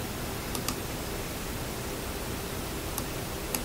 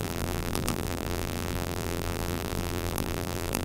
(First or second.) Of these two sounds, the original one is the first